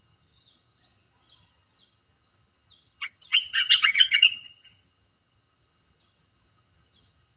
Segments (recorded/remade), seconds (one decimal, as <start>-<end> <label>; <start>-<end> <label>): 0.0-7.4 remade